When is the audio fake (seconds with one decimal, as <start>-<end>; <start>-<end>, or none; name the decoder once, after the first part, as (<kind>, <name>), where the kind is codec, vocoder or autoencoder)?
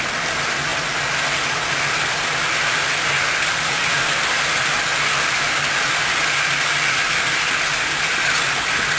none